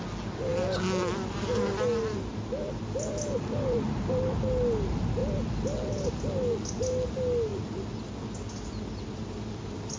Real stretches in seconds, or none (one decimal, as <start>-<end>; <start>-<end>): 0.0-10.0